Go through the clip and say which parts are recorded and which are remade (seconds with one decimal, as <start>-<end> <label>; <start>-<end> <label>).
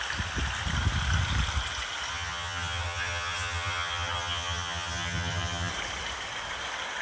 0.0-2.1 recorded; 2.1-5.7 remade; 5.7-7.0 recorded